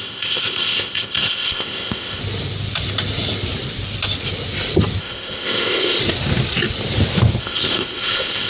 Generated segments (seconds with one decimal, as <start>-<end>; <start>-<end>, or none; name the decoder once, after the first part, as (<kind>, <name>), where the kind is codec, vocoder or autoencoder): 0.0-2.2 (codec, ZipCodec); 5.0-6.0; 7.4-8.5